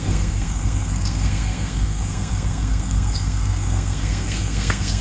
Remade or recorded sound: remade